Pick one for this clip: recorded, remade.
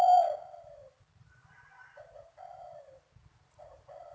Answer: recorded